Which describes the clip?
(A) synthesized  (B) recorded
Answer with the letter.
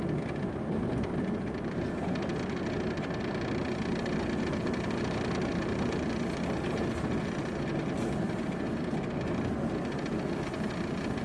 B